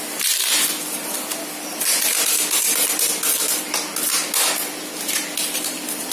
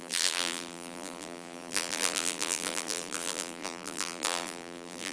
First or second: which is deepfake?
second